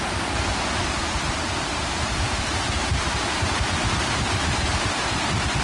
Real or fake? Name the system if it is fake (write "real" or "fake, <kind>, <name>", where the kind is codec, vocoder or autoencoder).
fake, vocoder, BigVGAN v2